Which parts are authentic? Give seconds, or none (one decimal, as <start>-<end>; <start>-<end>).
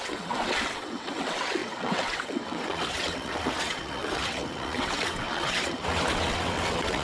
none